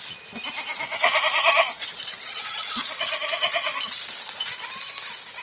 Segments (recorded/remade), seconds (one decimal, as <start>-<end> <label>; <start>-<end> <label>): 0.0-0.7 recorded; 0.7-3.7 remade; 3.7-5.4 recorded